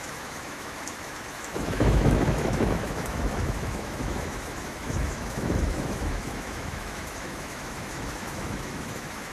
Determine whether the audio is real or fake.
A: fake